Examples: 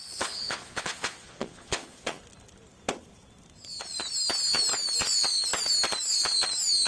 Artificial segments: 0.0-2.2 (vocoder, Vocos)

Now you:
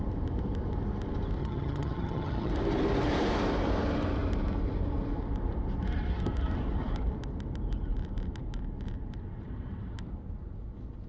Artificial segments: 1.4-2.5 (vocoder, HiFi-GAN)

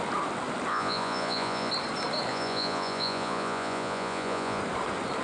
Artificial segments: 0.7-1.7 (vocoder, Vocos); 2.3-4.6

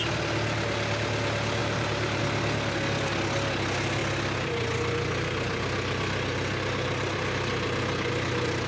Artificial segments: 1.6-2.2 (vocoder, BigVGAN v2)

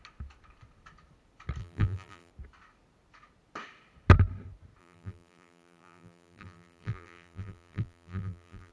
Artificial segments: 1.6-2.3 (vocoder, BigVGAN v2); 4.8-8.7

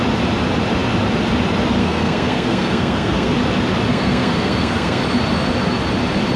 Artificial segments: 1.8-3.3 (codec, SNAC); 3.9-5.0

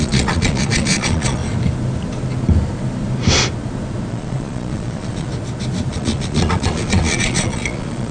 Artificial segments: 0.0-1.4 (vocoder, Vocos); 4.1-5.3; 5.9-8.1

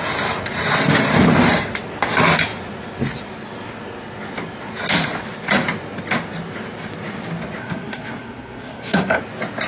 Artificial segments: 7.6-9.2 (codec, SNAC)